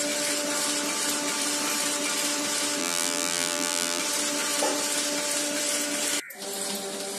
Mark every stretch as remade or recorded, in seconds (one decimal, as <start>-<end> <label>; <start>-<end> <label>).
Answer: 0.0-2.8 recorded; 2.8-4.0 remade; 4.0-7.2 recorded